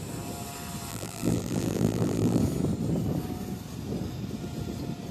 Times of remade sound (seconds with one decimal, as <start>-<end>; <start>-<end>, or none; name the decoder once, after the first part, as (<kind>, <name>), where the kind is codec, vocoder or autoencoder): 0.9-2.4 (vocoder, BigVGAN v2)